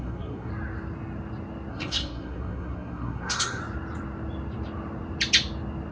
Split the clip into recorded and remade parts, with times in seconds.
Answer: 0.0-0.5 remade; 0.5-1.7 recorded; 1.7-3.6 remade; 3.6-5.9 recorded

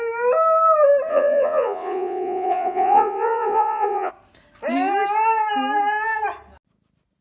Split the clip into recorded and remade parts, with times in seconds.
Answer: 0.0-1.1 recorded; 1.1-4.1 remade; 4.1-7.2 recorded

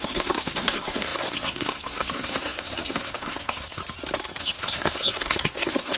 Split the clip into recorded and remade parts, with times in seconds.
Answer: 0.0-3.8 remade; 3.8-4.4 recorded; 4.4-6.0 remade

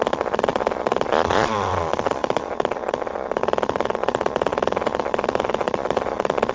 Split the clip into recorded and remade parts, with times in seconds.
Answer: 0.0-6.5 remade

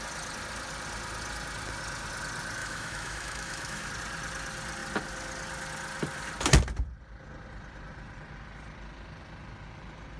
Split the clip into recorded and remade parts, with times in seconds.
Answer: 0.0-2.6 recorded; 2.6-3.9 remade; 3.9-10.2 recorded

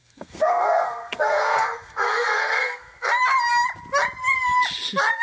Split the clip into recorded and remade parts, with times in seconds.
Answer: 0.0-3.1 remade; 3.1-5.2 recorded

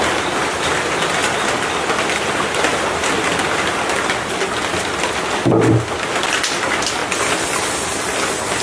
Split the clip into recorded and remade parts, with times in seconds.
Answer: 0.0-8.6 recorded

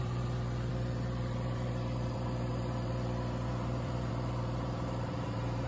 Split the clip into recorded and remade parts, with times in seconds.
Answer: 0.0-5.7 remade